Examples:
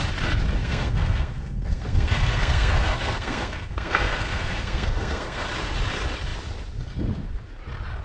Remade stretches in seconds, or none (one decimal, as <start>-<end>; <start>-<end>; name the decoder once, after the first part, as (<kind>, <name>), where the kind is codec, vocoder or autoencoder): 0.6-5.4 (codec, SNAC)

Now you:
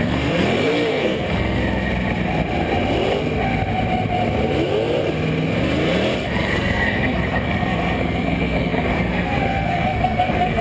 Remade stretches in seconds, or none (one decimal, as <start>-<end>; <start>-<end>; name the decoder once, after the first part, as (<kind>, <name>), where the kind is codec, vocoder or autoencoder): 0.0-1.6 (codec, SNAC); 6.3-10.6

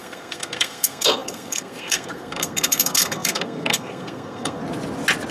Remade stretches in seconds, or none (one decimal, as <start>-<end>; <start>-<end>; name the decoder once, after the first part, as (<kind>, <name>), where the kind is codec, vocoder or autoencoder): 0.0-4.6 (codec, SNAC)

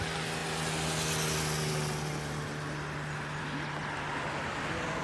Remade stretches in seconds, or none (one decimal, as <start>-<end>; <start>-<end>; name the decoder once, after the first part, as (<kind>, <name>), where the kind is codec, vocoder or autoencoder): none